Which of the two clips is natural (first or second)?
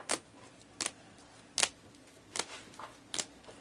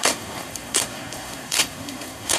first